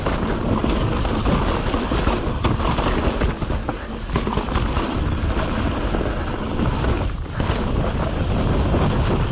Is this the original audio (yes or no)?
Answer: yes